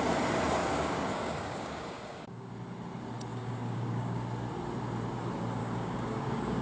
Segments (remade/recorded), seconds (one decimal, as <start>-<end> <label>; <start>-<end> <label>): 0.0-0.6 recorded; 0.6-2.5 remade; 2.5-3.3 recorded; 3.3-4.2 remade; 4.2-5.6 recorded; 5.6-6.6 remade